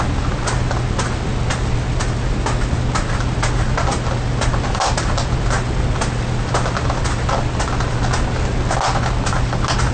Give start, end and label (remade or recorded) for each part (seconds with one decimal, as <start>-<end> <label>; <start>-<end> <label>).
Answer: 0.0-9.9 recorded